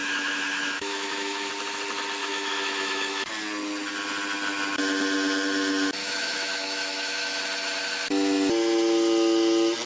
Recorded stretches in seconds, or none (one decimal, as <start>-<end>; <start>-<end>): 1.5-2.2; 3.3-6.0; 7.4-9.9